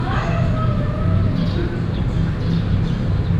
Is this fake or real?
real